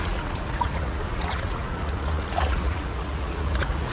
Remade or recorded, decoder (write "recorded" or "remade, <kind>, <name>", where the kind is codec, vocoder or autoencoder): remade, vocoder, Vocos